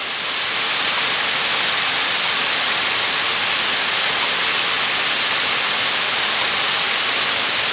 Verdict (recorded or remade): recorded